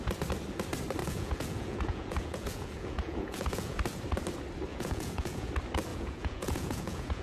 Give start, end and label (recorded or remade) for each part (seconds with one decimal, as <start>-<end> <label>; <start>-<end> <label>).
0.0-1.0 recorded; 1.0-3.8 remade; 3.8-4.7 recorded; 4.7-5.5 remade; 5.5-5.9 recorded; 5.9-7.2 remade